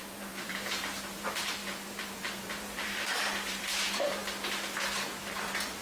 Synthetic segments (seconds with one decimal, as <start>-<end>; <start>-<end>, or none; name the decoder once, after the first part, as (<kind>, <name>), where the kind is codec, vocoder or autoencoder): 0.0-4.2 (vocoder, BigVGAN v2); 5.2-5.8